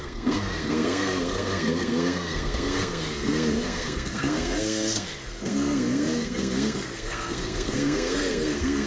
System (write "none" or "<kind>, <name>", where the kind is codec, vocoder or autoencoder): codec, SNAC